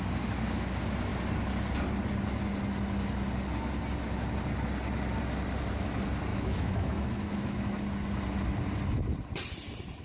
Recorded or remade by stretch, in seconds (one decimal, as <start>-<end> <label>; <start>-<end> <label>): 0.0-6.3 recorded; 6.3-7.8 remade; 7.8-10.0 recorded